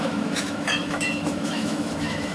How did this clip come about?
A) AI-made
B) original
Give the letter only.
A